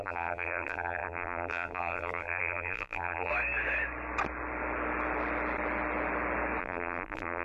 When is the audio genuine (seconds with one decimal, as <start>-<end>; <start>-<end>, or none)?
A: 3.3-6.6